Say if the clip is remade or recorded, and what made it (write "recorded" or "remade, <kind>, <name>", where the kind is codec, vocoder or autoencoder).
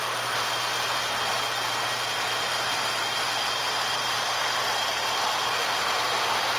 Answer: recorded